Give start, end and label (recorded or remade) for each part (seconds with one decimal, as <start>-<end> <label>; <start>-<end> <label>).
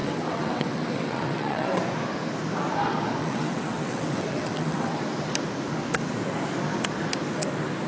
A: 0.0-1.8 remade; 1.8-3.2 recorded; 3.2-5.0 remade; 5.0-7.9 recorded